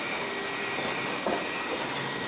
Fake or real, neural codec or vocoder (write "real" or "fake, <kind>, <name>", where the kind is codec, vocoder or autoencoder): real